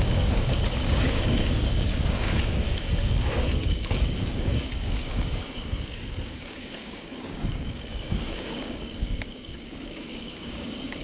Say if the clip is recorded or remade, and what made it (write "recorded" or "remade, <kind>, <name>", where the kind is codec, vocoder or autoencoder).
remade, codec, DAC